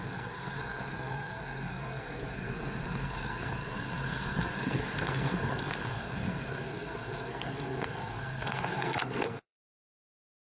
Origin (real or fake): fake